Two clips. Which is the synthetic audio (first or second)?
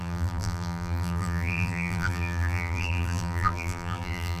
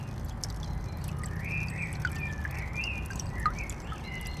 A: first